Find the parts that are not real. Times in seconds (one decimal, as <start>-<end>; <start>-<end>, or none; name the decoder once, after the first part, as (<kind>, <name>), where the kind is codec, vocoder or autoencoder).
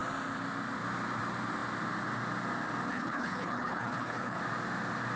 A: 2.9-4.4 (codec, HILCodec)